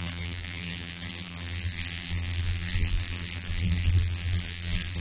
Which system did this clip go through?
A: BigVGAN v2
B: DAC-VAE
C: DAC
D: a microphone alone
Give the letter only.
A